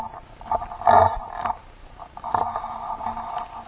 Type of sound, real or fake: real